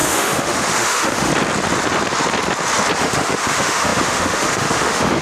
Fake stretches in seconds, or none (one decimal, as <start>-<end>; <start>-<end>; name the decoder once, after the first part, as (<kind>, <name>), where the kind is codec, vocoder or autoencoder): 0.0-1.3 (autoencoder, DAC-VAE); 3.0-5.2